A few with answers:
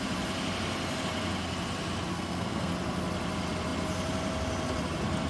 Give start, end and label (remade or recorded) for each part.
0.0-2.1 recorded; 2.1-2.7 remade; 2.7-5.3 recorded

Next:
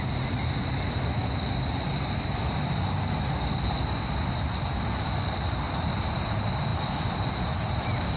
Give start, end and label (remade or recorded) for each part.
0.0-8.2 recorded

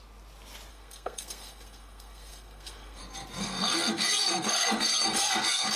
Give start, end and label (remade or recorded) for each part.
0.0-0.7 recorded; 0.7-3.0 remade; 3.0-3.4 recorded; 3.4-5.8 remade

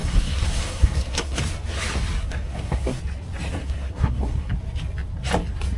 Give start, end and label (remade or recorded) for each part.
0.0-1.4 remade; 1.4-2.2 recorded; 2.2-3.0 remade; 3.0-3.6 recorded; 3.6-4.5 remade; 4.5-5.8 recorded